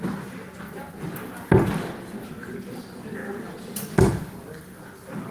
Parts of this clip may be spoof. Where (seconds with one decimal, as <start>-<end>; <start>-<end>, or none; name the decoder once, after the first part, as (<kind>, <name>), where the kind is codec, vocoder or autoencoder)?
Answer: none